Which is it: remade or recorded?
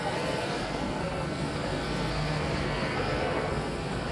remade